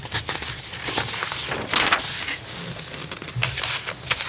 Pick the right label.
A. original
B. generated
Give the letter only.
A